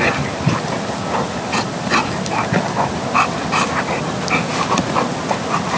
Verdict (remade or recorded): recorded